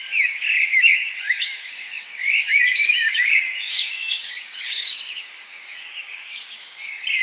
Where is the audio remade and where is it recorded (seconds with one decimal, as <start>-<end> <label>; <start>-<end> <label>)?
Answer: 0.0-7.2 remade